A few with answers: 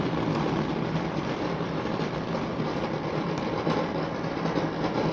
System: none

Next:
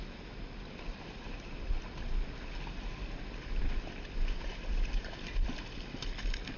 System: none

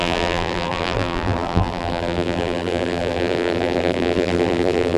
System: vocoder, BigVGAN v2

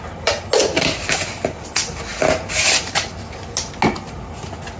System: none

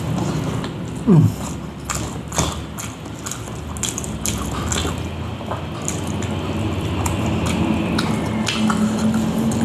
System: none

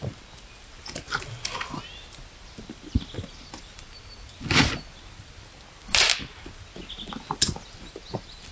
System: none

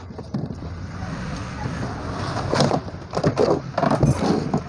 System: none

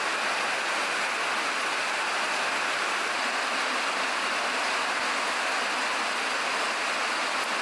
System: none